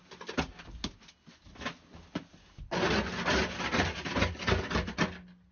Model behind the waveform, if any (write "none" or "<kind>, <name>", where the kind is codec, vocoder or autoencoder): none